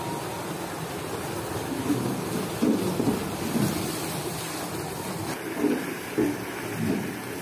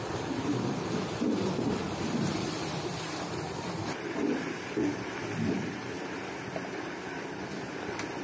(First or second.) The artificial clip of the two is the second